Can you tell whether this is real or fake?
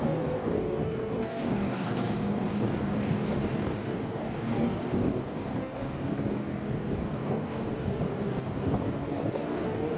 fake